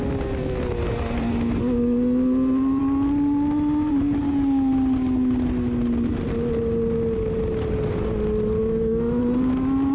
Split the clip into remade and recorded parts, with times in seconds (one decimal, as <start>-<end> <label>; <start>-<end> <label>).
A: 0.0-8.6 recorded; 8.6-9.2 remade; 9.2-9.9 recorded